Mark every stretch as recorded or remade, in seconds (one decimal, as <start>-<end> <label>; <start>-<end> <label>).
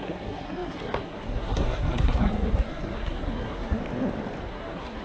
0.0-3.8 remade; 3.8-4.5 recorded; 4.5-5.0 remade